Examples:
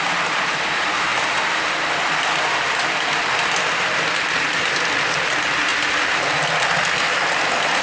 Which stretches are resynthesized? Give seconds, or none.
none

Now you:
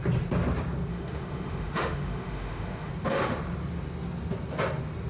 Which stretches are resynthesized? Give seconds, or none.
0.9-2.9 (autoencoder, DAC-VAE)

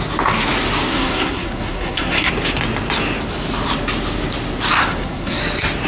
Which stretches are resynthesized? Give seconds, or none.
0.9-2.3 (codec, SNAC); 4.8-5.4